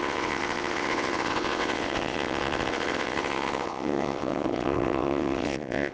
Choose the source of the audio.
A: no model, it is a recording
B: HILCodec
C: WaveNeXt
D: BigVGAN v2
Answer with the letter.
C